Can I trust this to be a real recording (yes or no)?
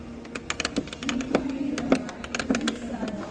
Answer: yes